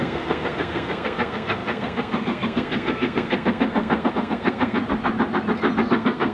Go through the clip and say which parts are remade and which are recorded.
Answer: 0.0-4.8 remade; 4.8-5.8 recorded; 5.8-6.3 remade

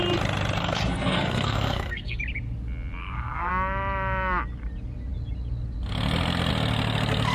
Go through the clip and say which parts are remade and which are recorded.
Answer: 0.0-0.6 recorded; 0.6-2.2 remade; 2.2-3.0 recorded; 3.0-3.5 remade; 3.5-7.3 recorded

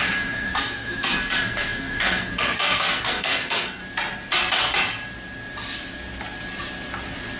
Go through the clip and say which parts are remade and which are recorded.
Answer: 0.0-3.8 remade; 3.8-7.4 recorded

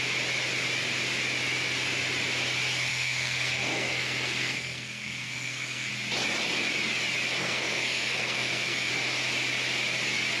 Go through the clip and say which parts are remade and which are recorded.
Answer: 0.0-2.9 recorded; 2.9-5.9 remade; 5.9-7.4 recorded; 7.4-8.9 remade; 8.9-10.4 recorded